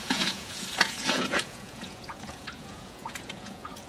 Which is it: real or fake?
fake